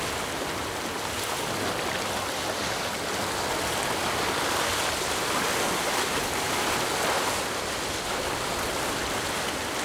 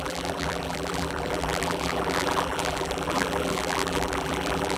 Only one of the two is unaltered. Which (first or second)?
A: first